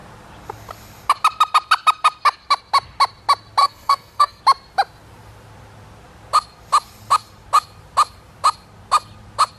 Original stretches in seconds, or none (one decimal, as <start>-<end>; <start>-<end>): 0.0-3.6; 4.4-9.6